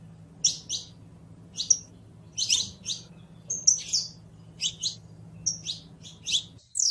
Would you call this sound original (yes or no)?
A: yes